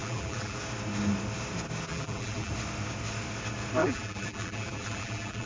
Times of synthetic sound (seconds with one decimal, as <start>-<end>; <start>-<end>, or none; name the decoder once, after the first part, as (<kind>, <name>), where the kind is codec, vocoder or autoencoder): 0.0-0.6 (vocoder, BigVGAN v2); 1.9-2.5; 3.8-5.5